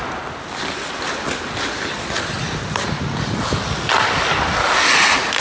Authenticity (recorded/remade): recorded